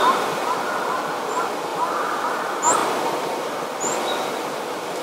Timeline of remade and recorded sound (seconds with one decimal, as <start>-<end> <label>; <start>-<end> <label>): 0.0-5.0 recorded